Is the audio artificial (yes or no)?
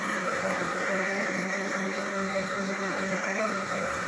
yes